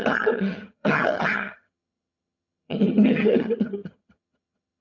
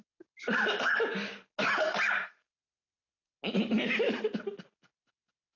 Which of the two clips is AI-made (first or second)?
first